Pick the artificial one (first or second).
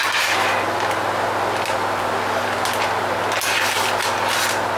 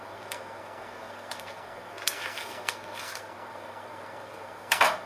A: second